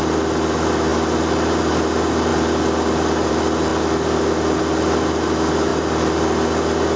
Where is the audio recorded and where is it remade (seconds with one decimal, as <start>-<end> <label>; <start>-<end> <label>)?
0.0-7.0 recorded